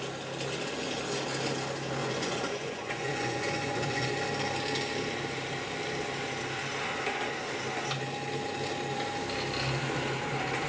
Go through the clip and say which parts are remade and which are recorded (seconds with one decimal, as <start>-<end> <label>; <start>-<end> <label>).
0.0-2.0 recorded; 2.0-4.1 remade; 4.1-10.7 recorded

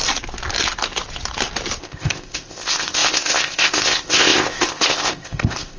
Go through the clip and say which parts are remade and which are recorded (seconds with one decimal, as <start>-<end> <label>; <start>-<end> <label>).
0.0-1.8 recorded; 1.8-5.8 remade

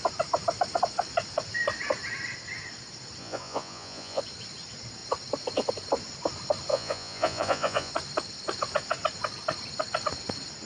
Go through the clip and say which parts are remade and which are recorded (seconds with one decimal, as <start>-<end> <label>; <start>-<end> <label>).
0.0-3.2 recorded; 3.2-4.2 remade; 4.2-6.7 recorded; 6.7-7.9 remade; 7.9-10.6 recorded

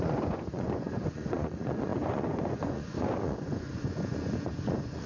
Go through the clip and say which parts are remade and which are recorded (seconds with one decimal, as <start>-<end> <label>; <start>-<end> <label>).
0.0-5.1 remade